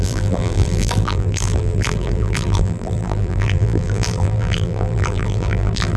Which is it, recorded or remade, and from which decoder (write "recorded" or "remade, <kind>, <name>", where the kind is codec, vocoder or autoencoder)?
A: remade, vocoder, BigVGAN v2